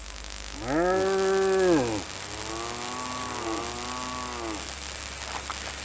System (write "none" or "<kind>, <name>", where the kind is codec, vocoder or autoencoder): none